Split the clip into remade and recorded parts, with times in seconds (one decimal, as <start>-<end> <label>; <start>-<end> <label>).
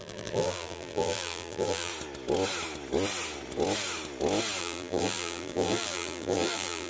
0.0-1.9 remade; 1.9-4.6 recorded; 4.6-6.9 remade